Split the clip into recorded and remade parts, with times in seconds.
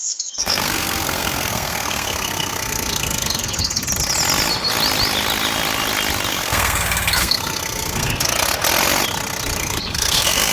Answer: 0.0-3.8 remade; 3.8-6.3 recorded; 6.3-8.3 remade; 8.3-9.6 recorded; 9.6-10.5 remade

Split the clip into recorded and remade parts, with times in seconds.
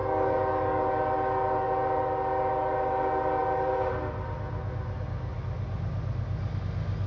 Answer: 0.0-0.9 remade; 0.9-7.1 recorded